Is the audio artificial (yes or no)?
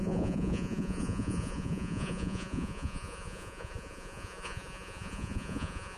yes